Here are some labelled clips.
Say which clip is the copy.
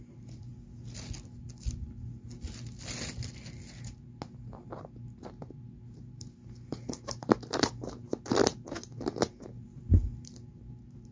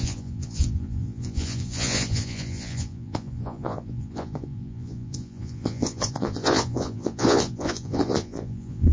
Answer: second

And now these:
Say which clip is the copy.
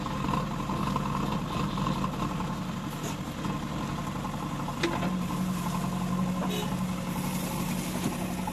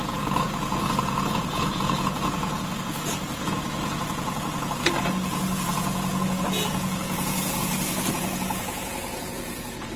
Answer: second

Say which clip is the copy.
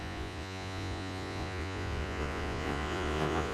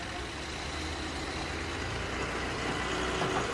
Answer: first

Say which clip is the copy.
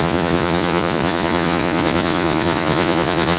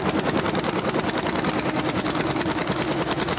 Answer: first